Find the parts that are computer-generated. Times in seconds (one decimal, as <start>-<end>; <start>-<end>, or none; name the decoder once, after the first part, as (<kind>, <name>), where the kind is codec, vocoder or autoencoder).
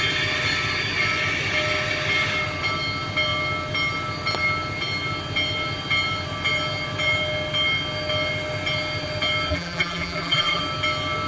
9.5-10.6 (vocoder, BigVGAN v2)